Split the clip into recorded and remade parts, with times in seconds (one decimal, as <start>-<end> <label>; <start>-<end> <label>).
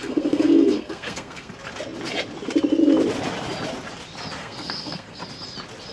0.0-1.5 remade; 1.5-4.4 recorded; 4.4-5.2 remade; 5.2-5.9 recorded